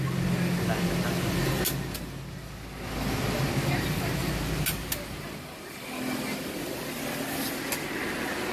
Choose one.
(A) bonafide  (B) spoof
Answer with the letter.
A